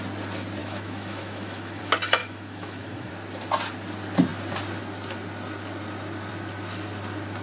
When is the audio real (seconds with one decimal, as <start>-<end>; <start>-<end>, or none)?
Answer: 0.0-0.6; 1.8-2.2; 3.1-7.4